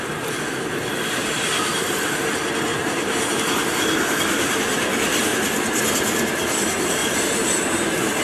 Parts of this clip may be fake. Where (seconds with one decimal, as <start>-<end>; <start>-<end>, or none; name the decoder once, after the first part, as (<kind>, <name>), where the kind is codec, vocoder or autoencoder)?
1.2-1.9 (vocoder, BigVGAN v2); 2.7-3.4; 5.2-5.8; 7.0-8.2